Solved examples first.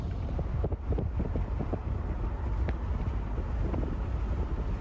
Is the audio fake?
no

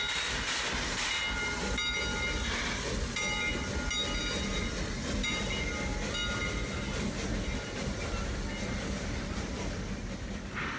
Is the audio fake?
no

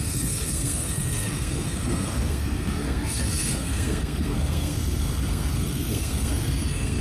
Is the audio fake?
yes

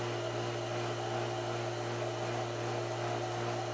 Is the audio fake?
no